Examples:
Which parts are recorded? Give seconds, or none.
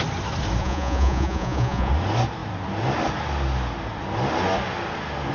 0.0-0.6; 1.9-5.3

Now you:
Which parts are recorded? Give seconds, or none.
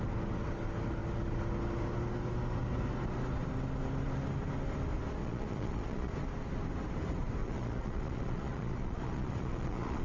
0.0-5.2; 6.1-7.4